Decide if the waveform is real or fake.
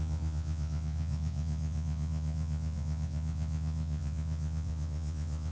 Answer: fake